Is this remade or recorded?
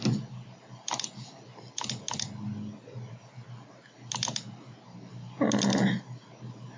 recorded